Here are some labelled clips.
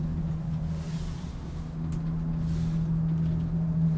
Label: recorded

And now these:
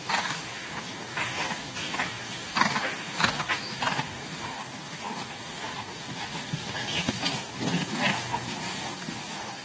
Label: remade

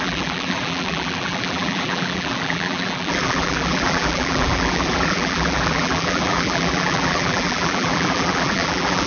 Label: remade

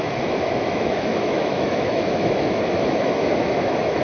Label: remade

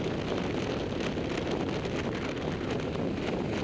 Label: recorded